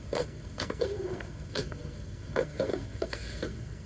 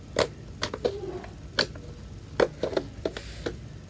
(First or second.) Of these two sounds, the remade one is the first